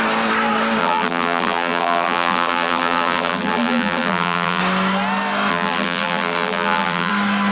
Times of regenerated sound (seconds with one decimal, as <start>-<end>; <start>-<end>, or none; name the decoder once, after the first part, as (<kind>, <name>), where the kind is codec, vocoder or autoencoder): 0.8-4.6 (vocoder, BigVGAN v2); 5.5-7.1